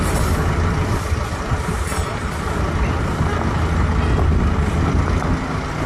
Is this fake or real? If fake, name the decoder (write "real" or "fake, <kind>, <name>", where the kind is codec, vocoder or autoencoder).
real